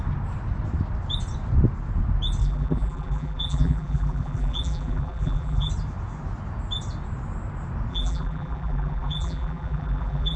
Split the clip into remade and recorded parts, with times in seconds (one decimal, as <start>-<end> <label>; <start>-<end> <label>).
0.0-2.4 recorded; 2.4-5.7 remade; 5.7-7.9 recorded; 7.9-10.4 remade